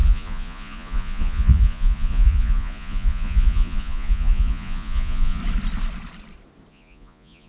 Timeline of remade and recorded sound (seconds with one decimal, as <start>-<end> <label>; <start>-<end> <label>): 0.0-5.4 remade; 5.4-6.7 recorded; 6.7-7.5 remade